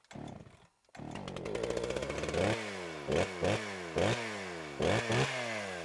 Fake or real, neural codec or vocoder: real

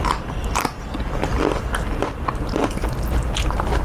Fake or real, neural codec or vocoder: real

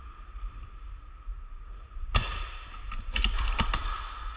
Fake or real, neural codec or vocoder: real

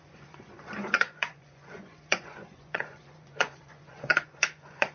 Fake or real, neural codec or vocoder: fake, vocoder, Vocos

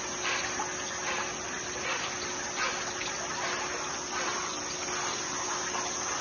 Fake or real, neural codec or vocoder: real